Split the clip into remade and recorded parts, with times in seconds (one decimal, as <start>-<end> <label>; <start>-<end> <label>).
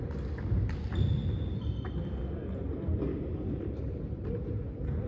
0.0-5.1 recorded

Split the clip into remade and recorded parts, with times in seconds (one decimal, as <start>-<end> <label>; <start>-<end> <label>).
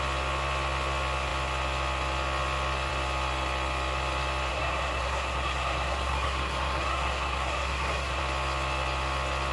0.0-4.5 recorded; 4.5-8.2 remade; 8.2-9.5 recorded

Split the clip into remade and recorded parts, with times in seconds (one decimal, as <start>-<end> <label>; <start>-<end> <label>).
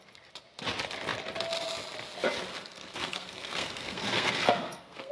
0.0-2.5 recorded; 2.5-5.1 remade